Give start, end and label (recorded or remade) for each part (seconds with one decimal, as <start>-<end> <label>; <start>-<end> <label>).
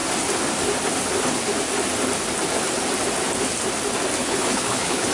0.0-4.2 recorded; 4.2-5.1 remade